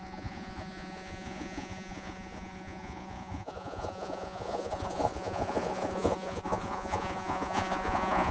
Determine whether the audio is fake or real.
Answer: fake